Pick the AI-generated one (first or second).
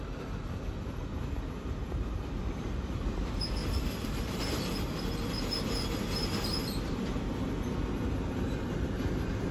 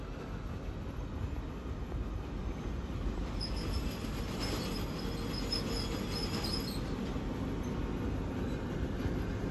first